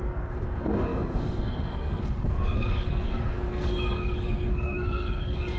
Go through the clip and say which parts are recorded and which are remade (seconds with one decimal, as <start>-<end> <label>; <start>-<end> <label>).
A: 0.0-5.6 remade

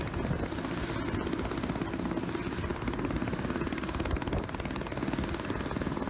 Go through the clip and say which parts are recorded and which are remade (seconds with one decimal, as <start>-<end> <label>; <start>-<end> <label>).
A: 0.0-6.1 recorded

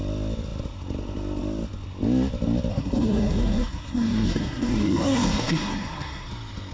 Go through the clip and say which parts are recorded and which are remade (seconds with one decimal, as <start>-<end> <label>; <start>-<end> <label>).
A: 0.0-2.7 recorded; 2.7-6.3 remade; 6.3-6.7 recorded

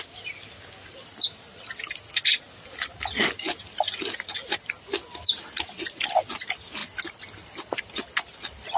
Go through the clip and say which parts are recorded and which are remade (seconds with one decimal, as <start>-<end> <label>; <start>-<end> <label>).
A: 0.0-8.8 recorded

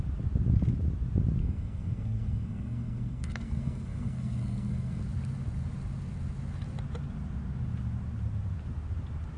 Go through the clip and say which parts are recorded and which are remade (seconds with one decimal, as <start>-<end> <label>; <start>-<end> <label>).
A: 0.0-1.4 recorded; 1.4-5.0 remade; 5.0-9.4 recorded

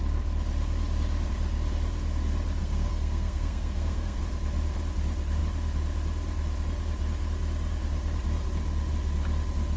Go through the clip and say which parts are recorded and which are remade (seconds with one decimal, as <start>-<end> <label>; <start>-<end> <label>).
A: 0.0-2.6 recorded; 2.6-4.2 remade; 4.2-9.8 recorded

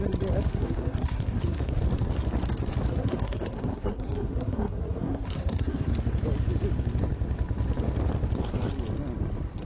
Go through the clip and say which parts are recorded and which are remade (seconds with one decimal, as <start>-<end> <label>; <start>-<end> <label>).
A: 0.0-0.5 recorded; 0.5-1.8 remade; 1.8-2.9 recorded; 2.9-5.9 remade; 5.9-9.6 recorded

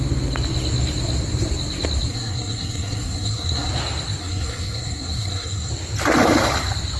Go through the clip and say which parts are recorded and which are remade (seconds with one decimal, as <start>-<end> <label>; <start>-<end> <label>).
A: 0.0-2.1 recorded; 2.1-3.7 remade; 3.7-4.2 recorded; 4.2-5.7 remade; 5.7-7.0 recorded